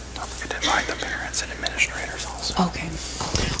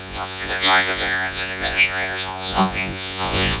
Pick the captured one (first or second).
first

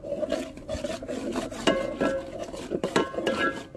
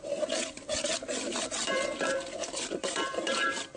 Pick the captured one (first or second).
first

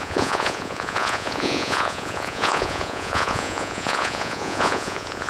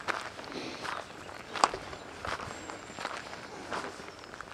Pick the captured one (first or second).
second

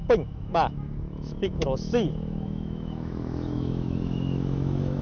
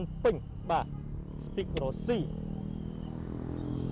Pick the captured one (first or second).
second